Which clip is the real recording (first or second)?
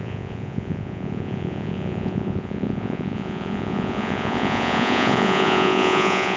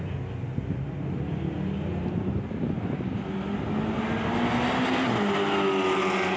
second